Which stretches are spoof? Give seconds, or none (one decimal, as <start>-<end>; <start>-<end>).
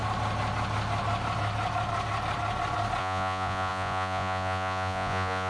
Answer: 3.0-5.5